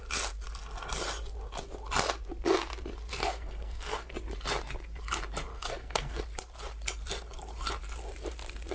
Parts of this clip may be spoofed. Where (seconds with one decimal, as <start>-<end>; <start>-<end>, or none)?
3.2-4.1; 5.5-6.2